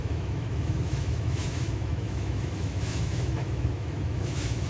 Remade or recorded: remade